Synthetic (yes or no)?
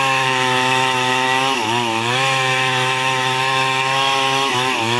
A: yes